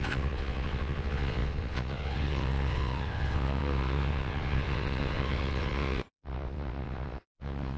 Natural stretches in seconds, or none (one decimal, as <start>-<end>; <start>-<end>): none